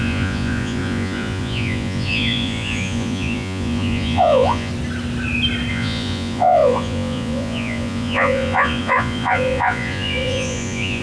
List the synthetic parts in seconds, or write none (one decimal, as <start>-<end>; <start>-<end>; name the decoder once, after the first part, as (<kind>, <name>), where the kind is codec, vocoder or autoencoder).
0.0-4.7 (vocoder, Vocos); 5.7-11.0